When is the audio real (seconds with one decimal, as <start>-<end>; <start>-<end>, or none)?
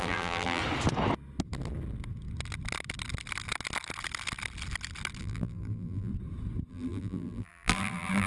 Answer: 0.6-5.2; 6.1-6.7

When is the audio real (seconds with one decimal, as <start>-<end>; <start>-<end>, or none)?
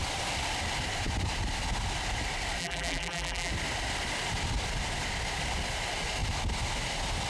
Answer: 0.0-2.6; 3.5-7.3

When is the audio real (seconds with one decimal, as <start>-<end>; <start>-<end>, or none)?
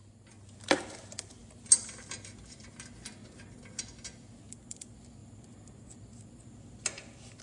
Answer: 0.0-7.4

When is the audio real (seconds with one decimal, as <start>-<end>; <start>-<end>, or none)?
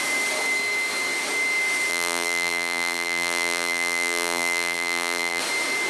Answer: 0.0-1.9; 5.4-5.9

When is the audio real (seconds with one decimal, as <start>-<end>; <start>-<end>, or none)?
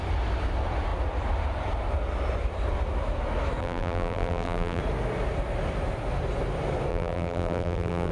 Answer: 0.0-3.6; 4.8-6.9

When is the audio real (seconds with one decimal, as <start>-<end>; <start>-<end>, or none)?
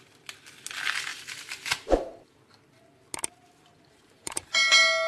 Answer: 0.0-1.1; 2.5-3.7; 4.4-5.1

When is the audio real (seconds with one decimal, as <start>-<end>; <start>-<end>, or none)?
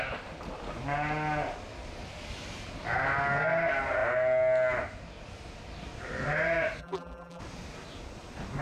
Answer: 0.0-6.8; 7.4-8.6